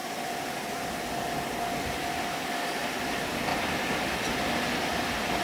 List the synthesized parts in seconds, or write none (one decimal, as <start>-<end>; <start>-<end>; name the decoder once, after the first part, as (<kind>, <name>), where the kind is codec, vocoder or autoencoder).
none